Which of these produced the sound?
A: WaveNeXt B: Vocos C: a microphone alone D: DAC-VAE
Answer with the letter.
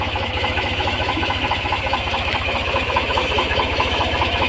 D